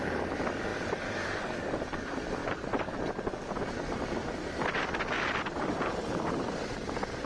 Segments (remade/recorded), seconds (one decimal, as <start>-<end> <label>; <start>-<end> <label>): 0.0-0.7 recorded; 0.7-1.4 remade; 1.4-2.4 recorded; 2.4-3.1 remade; 3.1-4.2 recorded; 4.2-4.8 remade; 4.8-7.3 recorded